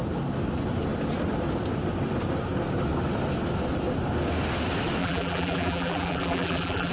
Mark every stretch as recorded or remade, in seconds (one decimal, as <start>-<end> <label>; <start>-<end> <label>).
0.0-5.0 recorded; 5.0-6.9 remade